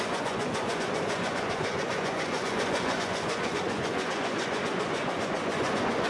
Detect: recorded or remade remade